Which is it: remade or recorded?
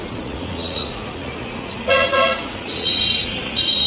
remade